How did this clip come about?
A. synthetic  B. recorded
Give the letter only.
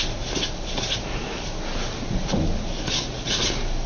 B